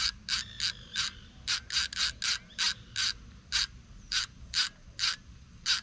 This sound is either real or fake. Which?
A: real